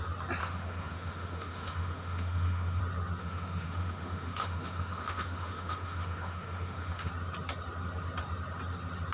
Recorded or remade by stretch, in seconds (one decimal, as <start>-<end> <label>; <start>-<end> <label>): 0.0-0.4 recorded; 0.4-2.8 remade; 2.8-3.2 recorded; 3.2-7.1 remade; 7.1-9.1 recorded